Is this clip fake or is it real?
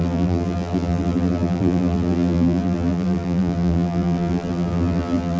fake